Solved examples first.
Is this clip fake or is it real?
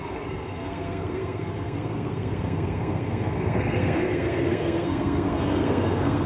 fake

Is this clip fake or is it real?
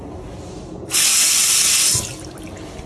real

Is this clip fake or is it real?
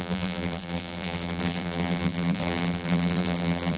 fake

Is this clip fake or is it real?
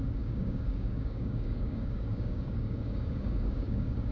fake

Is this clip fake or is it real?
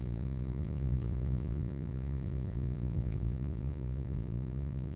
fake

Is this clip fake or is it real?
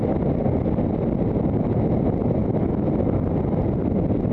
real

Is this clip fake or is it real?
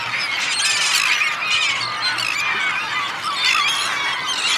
real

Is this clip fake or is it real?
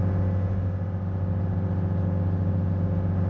real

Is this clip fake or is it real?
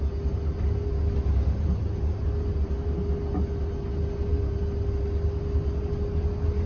real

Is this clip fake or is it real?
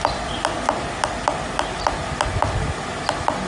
real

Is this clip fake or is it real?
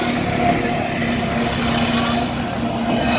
real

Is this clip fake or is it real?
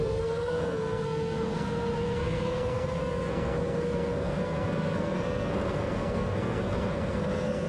fake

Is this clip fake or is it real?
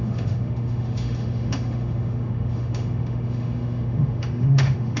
fake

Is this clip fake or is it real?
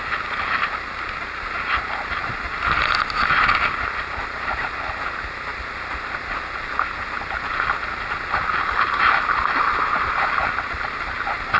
real